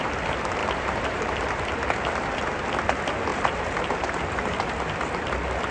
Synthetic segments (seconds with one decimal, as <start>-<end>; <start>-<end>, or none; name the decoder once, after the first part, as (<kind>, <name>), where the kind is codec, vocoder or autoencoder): 0.6-1.5 (vocoder, BigVGAN v2); 3.3-4.2